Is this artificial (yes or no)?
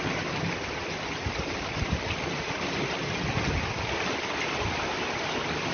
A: no